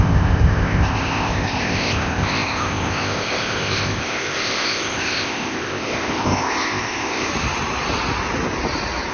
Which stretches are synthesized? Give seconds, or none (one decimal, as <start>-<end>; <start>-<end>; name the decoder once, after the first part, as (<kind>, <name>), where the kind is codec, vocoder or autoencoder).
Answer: 0.0-7.3 (codec, ZipCodec)